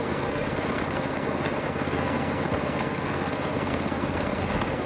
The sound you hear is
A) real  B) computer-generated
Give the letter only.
B